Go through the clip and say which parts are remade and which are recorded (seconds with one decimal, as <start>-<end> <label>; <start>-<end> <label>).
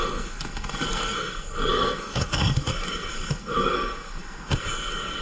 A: 0.0-5.2 remade